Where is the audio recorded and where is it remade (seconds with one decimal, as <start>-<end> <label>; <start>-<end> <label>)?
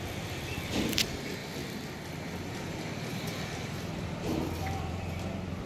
0.0-5.7 remade